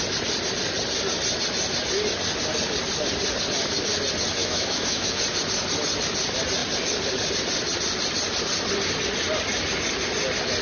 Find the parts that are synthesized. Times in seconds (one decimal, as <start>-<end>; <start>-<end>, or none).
4.4-5.2